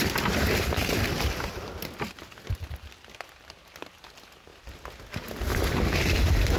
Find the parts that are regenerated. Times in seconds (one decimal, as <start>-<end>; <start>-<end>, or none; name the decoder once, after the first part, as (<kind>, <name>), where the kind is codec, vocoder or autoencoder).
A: none